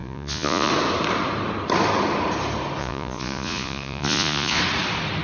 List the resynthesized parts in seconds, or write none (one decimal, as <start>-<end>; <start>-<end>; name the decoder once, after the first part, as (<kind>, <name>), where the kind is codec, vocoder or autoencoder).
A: 0.0-0.7 (vocoder, Vocos); 2.8-4.6